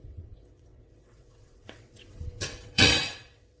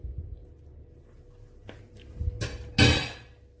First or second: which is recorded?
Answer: second